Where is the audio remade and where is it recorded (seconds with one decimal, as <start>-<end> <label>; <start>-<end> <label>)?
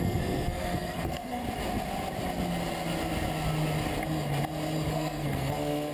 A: 0.0-1.4 remade; 1.4-4.9 recorded; 4.9-5.9 remade